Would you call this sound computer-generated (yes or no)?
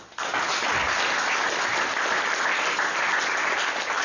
no